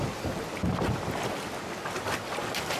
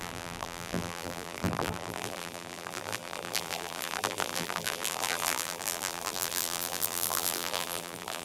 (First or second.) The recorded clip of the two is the first